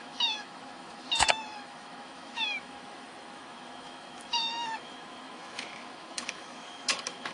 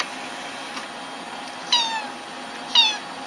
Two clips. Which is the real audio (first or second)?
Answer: second